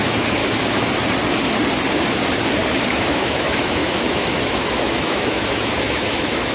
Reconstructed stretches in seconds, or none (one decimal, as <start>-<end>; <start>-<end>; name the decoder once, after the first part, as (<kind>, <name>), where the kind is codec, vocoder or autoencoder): 0.0-0.4 (autoencoder, DAC-VAE); 3.0-6.5